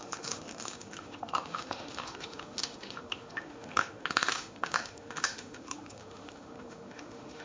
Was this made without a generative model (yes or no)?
no